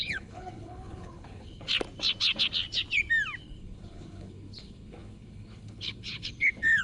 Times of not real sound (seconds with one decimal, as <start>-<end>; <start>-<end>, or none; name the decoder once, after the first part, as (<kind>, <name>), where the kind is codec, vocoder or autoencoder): 0.0-1.7 (codec, HILCodec); 3.4-6.8